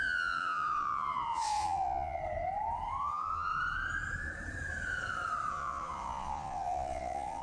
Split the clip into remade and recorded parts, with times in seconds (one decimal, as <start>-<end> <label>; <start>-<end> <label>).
0.0-2.2 remade; 2.2-3.0 recorded; 3.0-3.5 remade; 3.5-5.5 recorded; 5.5-7.4 remade